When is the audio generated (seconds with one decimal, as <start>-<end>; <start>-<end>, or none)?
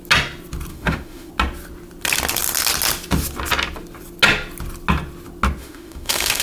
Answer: 0.7-1.3; 5.6-6.4